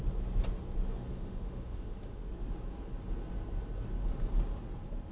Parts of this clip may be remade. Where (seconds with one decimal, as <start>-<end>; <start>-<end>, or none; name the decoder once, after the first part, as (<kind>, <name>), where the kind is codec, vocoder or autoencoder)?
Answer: 1.1-2.2 (autoencoder, DAC-VAE)